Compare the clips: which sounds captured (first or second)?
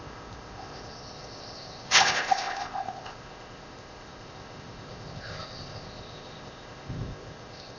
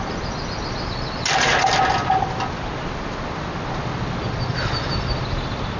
second